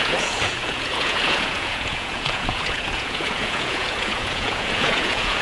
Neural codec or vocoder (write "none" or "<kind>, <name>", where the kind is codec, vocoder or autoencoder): vocoder, Vocos